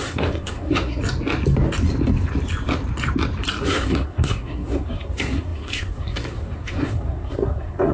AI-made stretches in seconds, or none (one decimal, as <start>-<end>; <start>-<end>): 0.0-1.0; 3.6-7.9